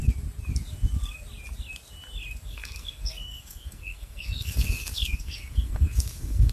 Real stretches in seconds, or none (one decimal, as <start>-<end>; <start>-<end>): 0.0-2.5